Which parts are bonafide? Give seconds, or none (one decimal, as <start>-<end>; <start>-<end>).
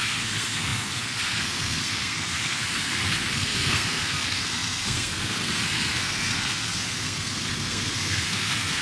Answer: none